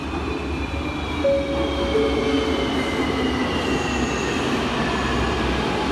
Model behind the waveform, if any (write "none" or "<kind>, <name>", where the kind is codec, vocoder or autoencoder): none